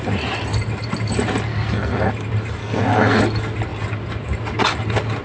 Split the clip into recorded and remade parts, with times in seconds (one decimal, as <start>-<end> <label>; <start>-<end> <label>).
0.0-1.5 recorded; 1.5-2.1 remade; 2.1-2.6 recorded; 2.6-3.2 remade; 3.2-5.2 recorded